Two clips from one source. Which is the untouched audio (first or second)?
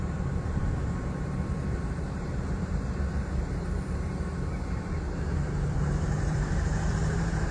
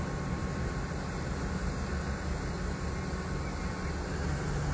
second